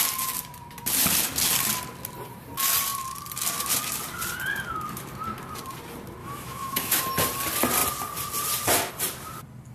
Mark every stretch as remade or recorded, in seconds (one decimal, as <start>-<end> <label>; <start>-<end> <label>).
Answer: 0.0-6.2 recorded; 6.2-7.0 remade; 7.0-9.7 recorded

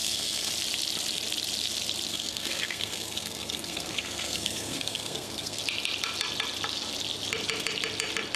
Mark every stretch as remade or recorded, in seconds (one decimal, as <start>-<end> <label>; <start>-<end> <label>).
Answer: 0.0-0.5 remade; 0.5-2.1 recorded; 2.1-5.6 remade; 5.6-8.4 recorded

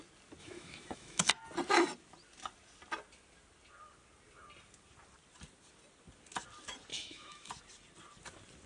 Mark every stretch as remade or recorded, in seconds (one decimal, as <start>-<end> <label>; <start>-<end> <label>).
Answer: 0.0-0.4 recorded; 0.4-1.3 remade; 1.3-6.9 recorded; 6.9-7.5 remade; 7.5-8.7 recorded

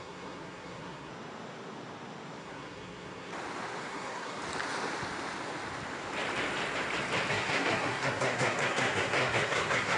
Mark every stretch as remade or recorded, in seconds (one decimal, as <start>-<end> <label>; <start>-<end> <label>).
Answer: 0.0-1.1 remade; 1.1-2.4 recorded; 2.4-3.3 remade; 3.3-3.8 recorded; 3.8-4.4 remade; 4.4-7.3 recorded; 7.3-10.0 remade

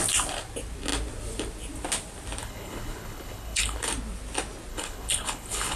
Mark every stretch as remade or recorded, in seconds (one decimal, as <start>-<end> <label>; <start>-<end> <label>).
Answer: 0.0-2.4 recorded; 2.4-3.9 remade; 3.9-4.7 recorded; 4.7-5.8 remade

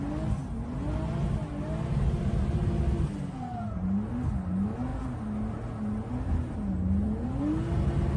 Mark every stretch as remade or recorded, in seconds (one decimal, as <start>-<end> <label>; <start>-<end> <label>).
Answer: 0.0-8.2 recorded

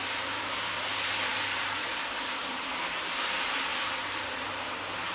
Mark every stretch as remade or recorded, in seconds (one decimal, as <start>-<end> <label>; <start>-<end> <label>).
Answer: 0.0-3.7 remade; 3.7-5.1 recorded

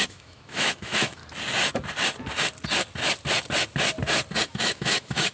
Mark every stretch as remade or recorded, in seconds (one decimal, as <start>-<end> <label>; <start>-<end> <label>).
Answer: 0.0-1.2 remade; 1.2-4.4 recorded; 4.4-5.3 remade